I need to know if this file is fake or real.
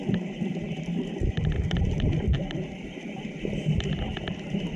fake